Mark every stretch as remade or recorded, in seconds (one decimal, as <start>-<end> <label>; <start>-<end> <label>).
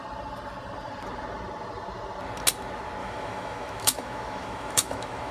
0.0-3.0 recorded; 3.0-5.3 remade